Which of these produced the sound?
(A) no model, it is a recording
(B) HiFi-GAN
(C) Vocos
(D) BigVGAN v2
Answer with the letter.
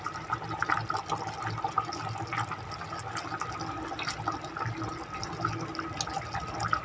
A